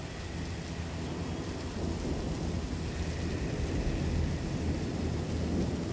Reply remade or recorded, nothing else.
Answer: recorded